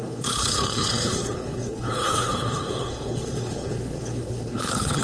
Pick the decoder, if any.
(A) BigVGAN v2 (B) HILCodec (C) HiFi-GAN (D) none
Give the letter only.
B